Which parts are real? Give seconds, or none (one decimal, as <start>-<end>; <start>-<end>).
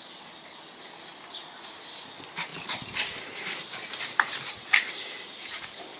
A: 0.0-1.4; 2.0-2.5; 5.6-6.0